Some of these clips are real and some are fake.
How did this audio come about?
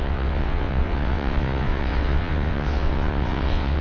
fake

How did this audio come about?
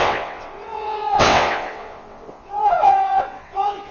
fake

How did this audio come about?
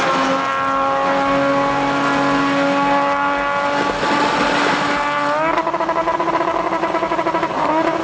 real